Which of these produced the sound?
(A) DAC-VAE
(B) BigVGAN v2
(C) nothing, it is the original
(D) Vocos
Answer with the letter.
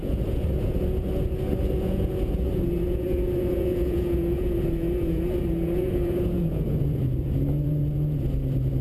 D